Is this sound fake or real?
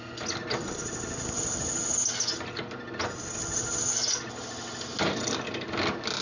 real